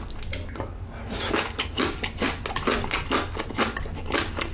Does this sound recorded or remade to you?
recorded